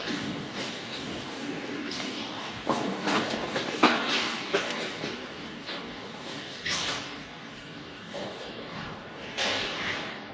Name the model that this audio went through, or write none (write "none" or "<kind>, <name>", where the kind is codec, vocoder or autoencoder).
codec, DAC